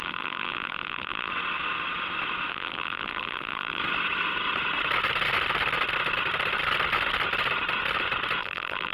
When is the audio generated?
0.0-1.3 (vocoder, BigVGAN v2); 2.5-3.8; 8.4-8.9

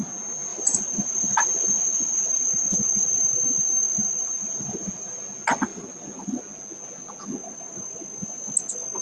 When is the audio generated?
0.5-5.2 (vocoder, BigVGAN v2); 5.7-6.4; 7.4-8.0